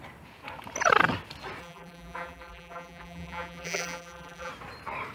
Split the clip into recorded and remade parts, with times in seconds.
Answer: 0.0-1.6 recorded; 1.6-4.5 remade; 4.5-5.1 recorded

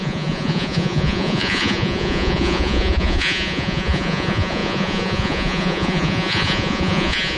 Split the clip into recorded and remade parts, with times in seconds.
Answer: 0.0-7.4 remade

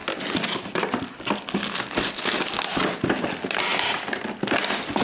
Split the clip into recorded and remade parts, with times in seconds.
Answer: 0.0-5.0 recorded

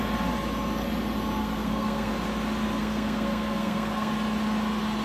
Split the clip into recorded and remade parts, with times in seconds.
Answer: 0.0-1.4 recorded; 1.4-2.1 remade; 2.1-2.8 recorded; 2.8-4.1 remade; 4.1-5.0 recorded

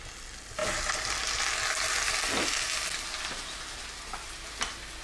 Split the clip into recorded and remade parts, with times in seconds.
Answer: 0.0-5.0 recorded

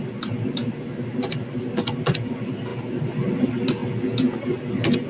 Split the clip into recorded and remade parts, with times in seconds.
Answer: 0.0-0.6 recorded; 0.6-1.4 remade; 1.4-5.1 recorded

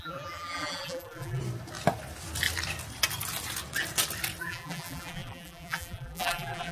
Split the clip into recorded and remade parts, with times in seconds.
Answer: 0.0-1.4 remade; 1.4-4.4 recorded; 4.4-6.7 remade

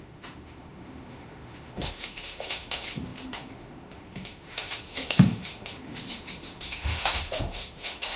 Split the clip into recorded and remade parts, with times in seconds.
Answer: 0.0-8.2 remade